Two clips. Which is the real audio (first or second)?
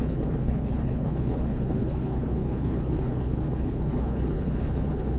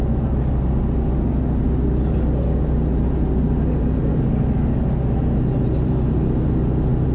second